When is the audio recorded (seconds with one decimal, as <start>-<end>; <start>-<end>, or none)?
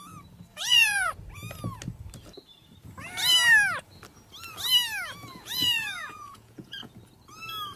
0.0-0.5; 1.1-5.3; 6.9-7.8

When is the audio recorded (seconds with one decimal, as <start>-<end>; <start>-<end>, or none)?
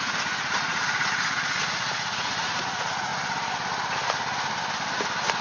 3.1-5.4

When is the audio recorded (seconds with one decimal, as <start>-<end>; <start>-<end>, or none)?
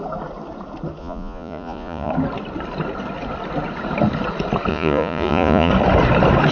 0.0-1.0; 2.1-4.7; 5.7-6.5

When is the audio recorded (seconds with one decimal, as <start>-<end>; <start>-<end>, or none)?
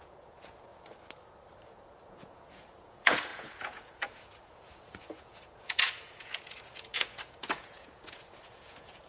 0.7-1.6